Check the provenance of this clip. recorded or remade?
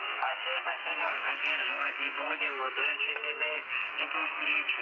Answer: remade